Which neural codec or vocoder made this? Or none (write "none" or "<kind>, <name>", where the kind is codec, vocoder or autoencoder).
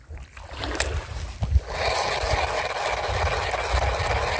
none